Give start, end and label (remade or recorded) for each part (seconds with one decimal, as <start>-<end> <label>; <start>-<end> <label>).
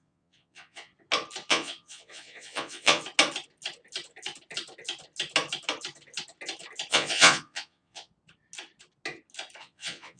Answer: 0.0-0.9 remade; 0.9-1.5 recorded; 1.5-3.0 remade; 3.0-6.9 recorded; 6.9-8.1 remade; 8.1-9.6 recorded; 9.6-10.2 remade